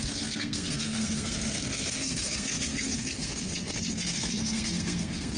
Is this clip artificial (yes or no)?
yes